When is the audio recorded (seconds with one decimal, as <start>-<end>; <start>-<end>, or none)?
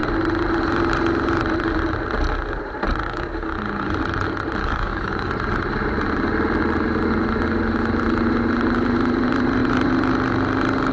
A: 0.0-3.0; 3.5-4.6; 5.3-10.9